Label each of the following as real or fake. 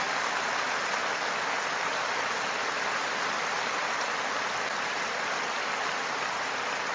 real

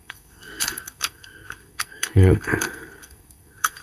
fake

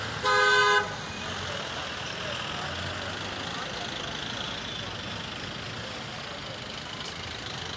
real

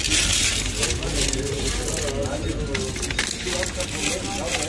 real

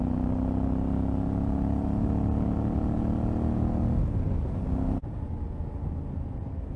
real